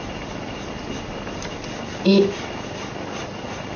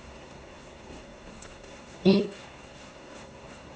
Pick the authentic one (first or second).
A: first